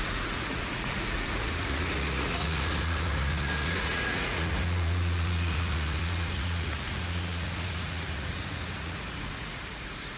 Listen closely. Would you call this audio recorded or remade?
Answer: remade